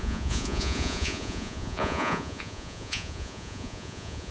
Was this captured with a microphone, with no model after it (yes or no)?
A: no